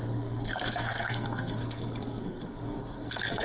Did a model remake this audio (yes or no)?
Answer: yes